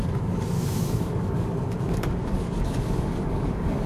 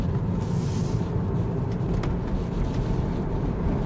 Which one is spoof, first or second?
first